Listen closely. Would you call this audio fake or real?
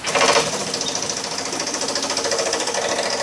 real